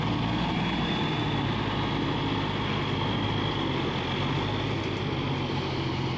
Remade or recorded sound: recorded